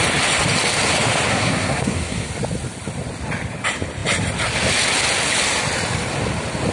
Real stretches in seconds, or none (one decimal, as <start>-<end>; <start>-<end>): 0.0-1.3; 2.3-6.7